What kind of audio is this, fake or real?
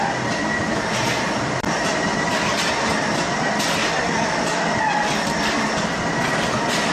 real